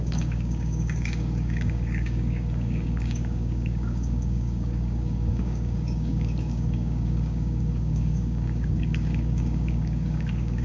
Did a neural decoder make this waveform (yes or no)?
yes